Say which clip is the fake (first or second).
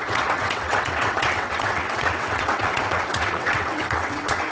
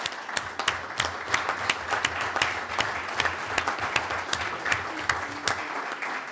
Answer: first